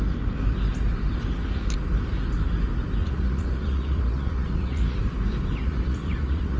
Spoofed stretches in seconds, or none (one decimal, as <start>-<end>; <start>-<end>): 3.0-5.0; 5.6-6.6